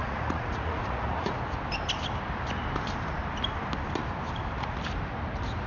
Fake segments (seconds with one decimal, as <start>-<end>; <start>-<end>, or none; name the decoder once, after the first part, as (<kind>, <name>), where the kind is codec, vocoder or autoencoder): 0.0-1.3 (vocoder, Vocos)